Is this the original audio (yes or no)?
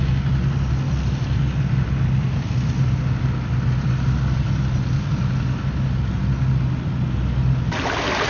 yes